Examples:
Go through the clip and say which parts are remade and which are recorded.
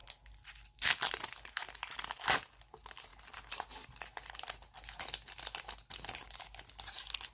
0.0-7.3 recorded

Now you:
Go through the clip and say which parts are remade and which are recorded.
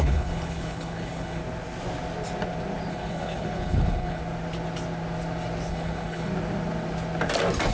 0.0-1.4 remade; 1.4-2.9 recorded; 2.9-4.2 remade; 4.2-5.7 recorded; 5.7-6.3 remade; 6.3-7.7 recorded